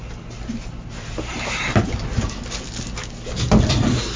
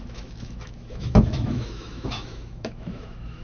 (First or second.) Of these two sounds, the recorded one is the first